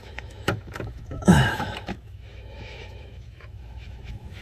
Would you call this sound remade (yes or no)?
yes